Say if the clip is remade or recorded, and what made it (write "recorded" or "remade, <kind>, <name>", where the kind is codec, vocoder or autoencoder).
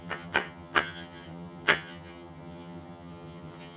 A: remade, vocoder, HiFi-GAN